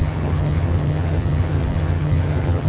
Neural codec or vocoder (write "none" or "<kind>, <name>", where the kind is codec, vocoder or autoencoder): vocoder, HiFi-GAN